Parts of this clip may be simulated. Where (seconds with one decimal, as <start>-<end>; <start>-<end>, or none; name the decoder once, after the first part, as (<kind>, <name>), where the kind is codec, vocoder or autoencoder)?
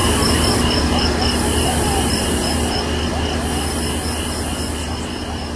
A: 0.0-3.2 (vocoder, BigVGAN v2)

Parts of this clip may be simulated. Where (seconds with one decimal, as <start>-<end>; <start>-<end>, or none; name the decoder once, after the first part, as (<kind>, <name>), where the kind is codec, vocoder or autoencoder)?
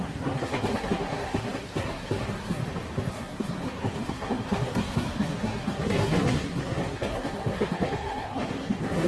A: 0.0-2.6 (codec, SNAC); 3.1-9.1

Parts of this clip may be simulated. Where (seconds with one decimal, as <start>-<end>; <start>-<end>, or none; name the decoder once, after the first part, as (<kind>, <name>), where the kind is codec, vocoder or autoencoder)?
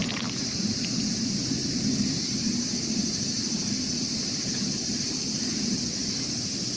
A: 1.6-5.2 (vocoder, BigVGAN v2); 6.0-6.8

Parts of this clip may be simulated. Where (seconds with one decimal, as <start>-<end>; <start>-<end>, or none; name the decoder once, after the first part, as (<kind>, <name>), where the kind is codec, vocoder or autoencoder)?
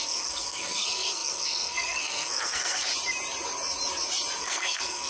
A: 0.0-2.9 (codec, SNAC); 4.4-5.1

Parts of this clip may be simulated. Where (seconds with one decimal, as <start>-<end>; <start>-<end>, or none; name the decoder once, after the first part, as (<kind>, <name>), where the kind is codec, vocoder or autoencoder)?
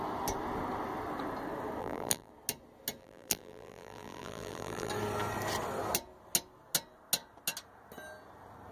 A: 1.8-2.3 (vocoder, BigVGAN v2); 3.0-4.9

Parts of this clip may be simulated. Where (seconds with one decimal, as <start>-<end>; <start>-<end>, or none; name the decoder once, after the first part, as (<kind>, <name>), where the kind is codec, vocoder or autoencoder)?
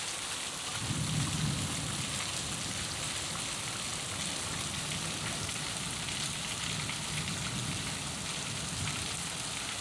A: none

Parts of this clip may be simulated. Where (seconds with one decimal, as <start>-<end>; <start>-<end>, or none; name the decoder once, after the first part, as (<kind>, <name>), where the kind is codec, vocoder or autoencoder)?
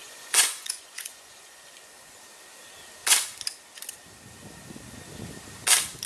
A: 0.0-2.1 (vocoder, Vocos)